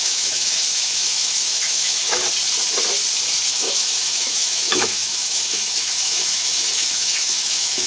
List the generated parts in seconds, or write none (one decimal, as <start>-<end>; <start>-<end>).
0.0-2.2; 3.5-7.9